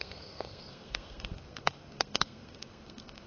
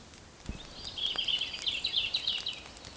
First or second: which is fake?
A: first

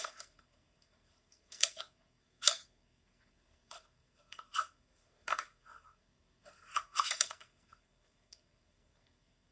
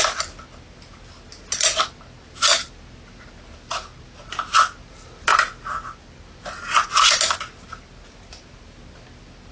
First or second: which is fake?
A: first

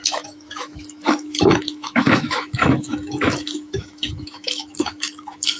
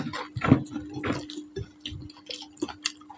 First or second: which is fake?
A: first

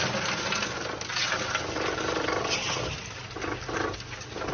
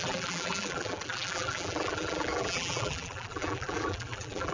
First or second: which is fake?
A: second